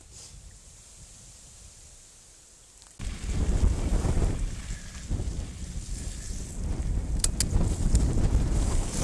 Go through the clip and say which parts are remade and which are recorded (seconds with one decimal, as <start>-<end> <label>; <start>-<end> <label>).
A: 0.0-9.0 recorded